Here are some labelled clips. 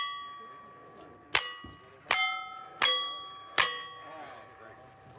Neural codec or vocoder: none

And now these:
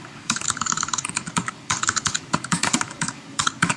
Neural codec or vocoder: codec, DAC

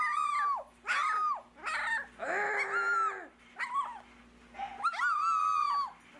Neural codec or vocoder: none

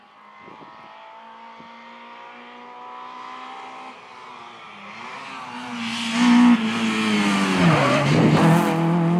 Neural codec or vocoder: none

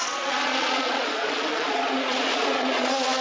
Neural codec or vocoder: vocoder, Vocos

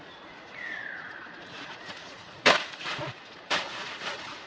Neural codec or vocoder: vocoder, Vocos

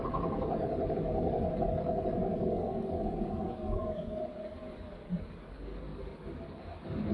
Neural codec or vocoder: codec, DAC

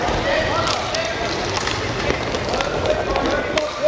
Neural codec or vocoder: none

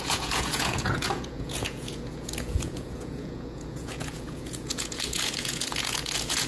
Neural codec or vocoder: vocoder, Vocos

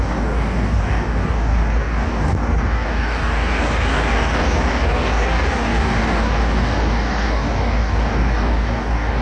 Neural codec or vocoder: codec, DAC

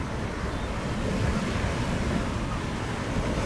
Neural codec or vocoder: none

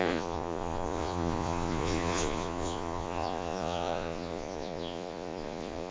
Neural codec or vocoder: vocoder, Vocos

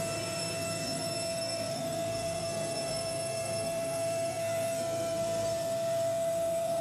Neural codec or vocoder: codec, SNAC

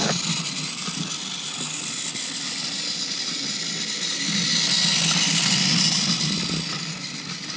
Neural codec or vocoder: none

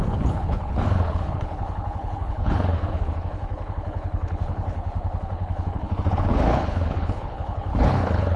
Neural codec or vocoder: codec, HILCodec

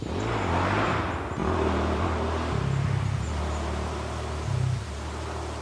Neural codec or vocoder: none